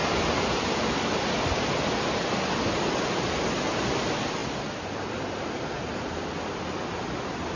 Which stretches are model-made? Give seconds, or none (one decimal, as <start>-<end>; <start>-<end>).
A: none